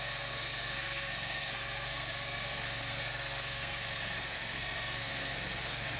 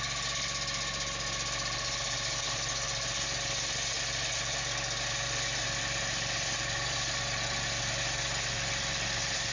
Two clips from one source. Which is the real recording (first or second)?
second